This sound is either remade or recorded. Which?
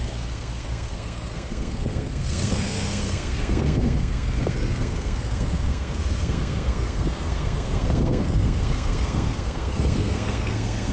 remade